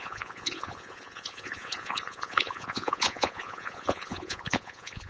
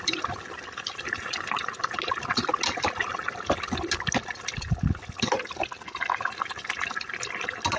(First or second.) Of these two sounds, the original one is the second